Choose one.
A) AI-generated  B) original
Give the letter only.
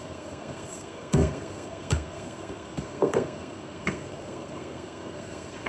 A